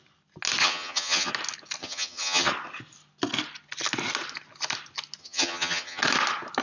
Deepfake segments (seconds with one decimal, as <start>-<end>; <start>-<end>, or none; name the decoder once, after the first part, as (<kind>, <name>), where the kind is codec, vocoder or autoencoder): 0.6-1.3 (vocoder, HiFi-GAN); 1.8-2.5; 5.2-6.0